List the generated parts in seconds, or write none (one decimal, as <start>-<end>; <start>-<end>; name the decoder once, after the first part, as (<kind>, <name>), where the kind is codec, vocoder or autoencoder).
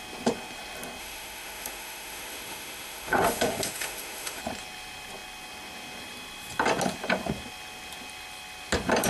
1.0-4.4 (autoencoder, DAC-VAE)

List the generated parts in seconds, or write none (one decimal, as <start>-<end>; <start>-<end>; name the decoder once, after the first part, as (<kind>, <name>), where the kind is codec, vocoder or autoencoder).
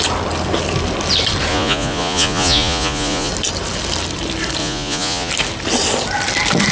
1.5-3.3 (vocoder, Vocos); 4.6-5.3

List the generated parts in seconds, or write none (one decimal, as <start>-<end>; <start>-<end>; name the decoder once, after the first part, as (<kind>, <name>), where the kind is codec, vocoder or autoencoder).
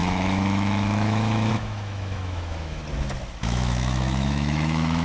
0.0-2.8 (autoencoder, DAC-VAE); 3.4-5.0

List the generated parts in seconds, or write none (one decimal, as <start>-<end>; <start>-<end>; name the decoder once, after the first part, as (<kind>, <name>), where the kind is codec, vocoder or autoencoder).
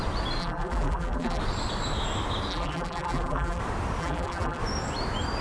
0.4-1.4 (vocoder, BigVGAN v2); 2.5-3.6; 4.0-4.6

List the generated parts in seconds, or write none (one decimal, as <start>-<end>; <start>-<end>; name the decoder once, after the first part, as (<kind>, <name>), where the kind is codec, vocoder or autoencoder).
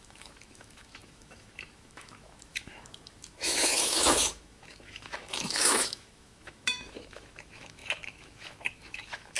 0.0-9.4 (autoencoder, DAC-VAE)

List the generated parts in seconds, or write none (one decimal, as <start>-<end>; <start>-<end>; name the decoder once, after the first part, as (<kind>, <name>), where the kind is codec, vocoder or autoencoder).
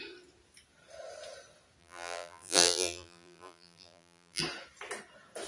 1.8-4.4 (vocoder, BigVGAN v2)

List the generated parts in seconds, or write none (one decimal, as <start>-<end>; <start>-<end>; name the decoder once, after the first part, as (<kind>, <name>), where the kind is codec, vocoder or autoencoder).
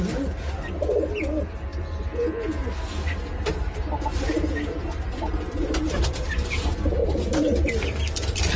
none